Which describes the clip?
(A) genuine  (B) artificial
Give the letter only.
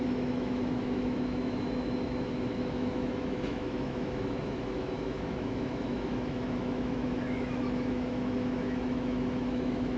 B